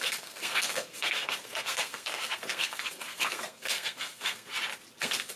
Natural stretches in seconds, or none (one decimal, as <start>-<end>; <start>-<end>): 4.5-5.0